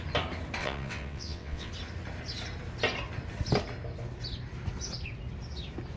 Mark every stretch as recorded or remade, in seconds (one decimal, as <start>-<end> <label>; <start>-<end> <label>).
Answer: 0.0-0.6 recorded; 0.6-1.7 remade; 1.7-6.0 recorded